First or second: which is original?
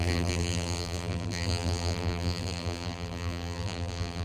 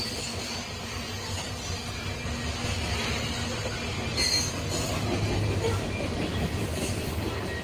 second